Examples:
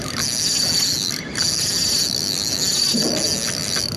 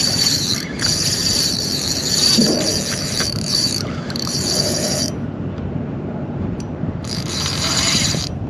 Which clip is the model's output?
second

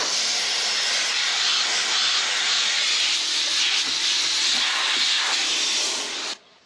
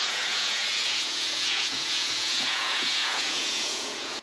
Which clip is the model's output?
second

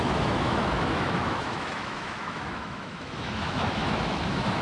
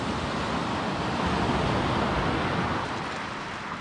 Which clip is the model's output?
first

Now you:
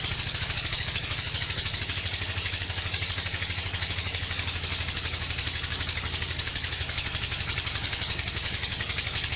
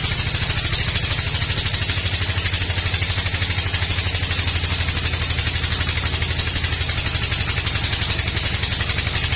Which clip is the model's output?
first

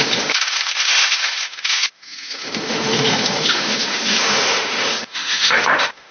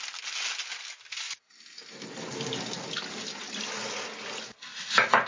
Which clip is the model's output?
first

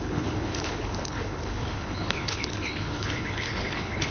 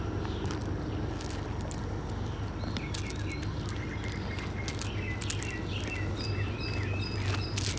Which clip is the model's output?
first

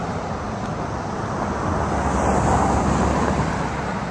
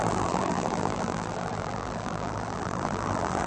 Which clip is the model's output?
second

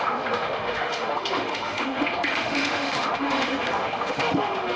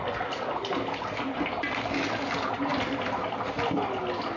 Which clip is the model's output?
first